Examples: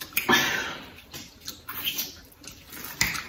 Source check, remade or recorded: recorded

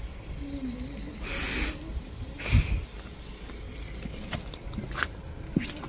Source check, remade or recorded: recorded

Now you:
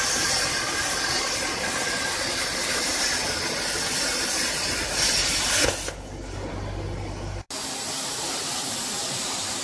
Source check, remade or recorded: recorded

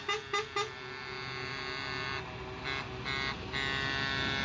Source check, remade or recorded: recorded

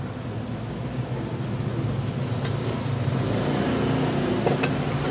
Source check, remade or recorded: recorded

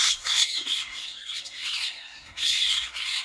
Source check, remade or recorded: remade